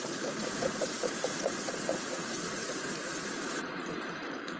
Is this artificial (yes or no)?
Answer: yes